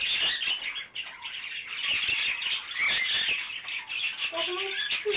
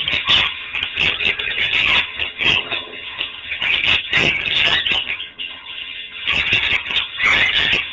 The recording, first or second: first